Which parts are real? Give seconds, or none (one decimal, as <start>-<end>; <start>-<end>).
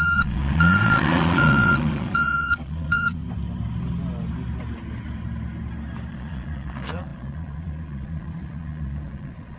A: 3.2-6.1